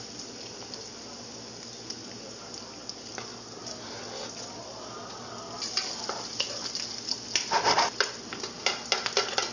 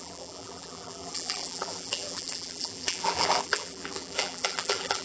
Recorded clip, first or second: first